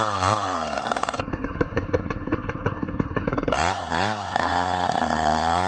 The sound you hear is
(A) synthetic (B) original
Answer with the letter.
A